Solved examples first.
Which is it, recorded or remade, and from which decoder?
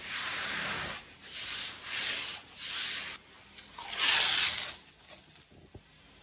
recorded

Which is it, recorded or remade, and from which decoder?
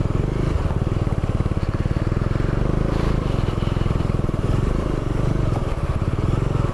remade, vocoder, BigVGAN v2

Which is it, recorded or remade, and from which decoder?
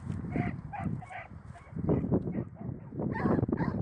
remade, vocoder, BigVGAN v2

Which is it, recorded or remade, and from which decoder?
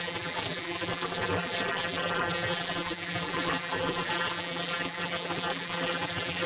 remade, vocoder, BigVGAN v2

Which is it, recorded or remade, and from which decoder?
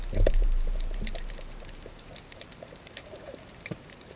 remade, vocoder, BigVGAN v2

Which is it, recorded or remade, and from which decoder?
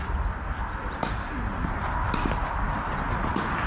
recorded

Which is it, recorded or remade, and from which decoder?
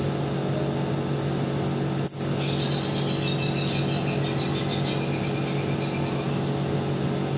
recorded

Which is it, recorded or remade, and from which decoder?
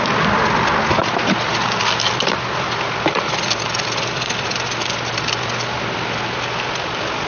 recorded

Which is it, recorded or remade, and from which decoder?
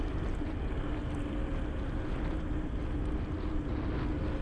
recorded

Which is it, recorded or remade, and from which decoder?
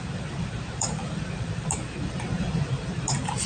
remade, vocoder, BigVGAN v2